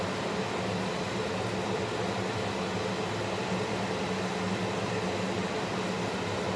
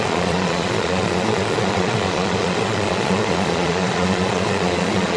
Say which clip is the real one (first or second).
first